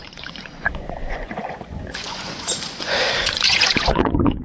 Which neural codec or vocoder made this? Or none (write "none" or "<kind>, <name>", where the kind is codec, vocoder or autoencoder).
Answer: vocoder, Vocos